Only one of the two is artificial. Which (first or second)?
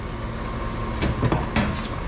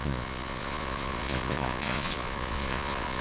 second